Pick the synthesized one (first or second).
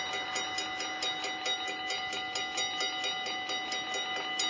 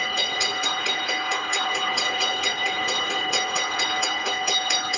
second